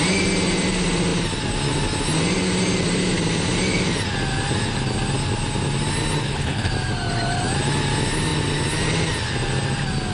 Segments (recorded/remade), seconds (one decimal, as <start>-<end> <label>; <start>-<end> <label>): 0.0-6.2 recorded; 6.2-6.7 remade; 6.7-10.1 recorded